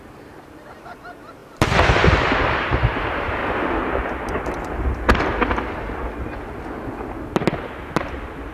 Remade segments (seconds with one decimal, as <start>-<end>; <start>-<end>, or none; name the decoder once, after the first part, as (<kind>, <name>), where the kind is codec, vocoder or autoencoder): 0.0-1.4 (vocoder, BigVGAN v2); 2.5-3.4; 8.0-8.5